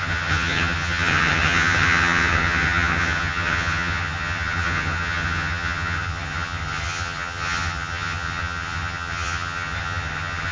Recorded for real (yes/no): no